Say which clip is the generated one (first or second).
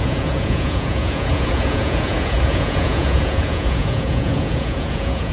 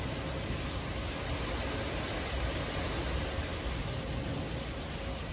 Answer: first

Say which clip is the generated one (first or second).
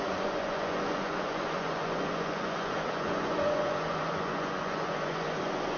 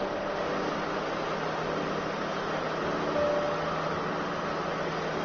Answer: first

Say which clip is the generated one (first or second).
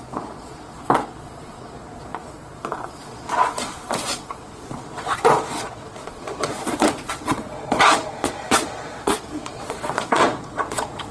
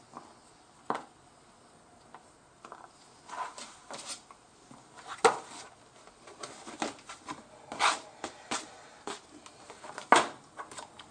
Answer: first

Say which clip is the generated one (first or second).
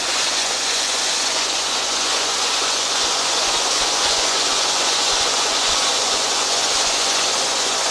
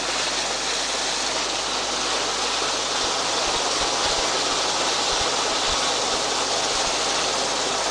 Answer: first